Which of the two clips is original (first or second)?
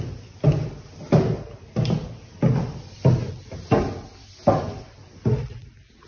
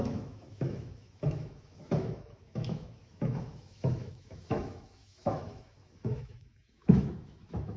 first